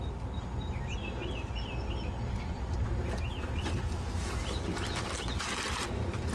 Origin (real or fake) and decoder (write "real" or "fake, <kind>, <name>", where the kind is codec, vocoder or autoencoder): real